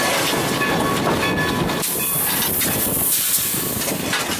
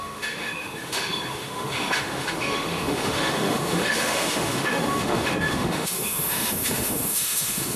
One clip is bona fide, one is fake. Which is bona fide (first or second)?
first